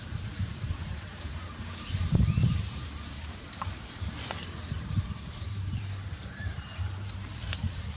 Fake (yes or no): yes